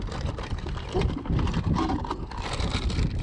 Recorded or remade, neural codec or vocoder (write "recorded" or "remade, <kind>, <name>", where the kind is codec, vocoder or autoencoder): recorded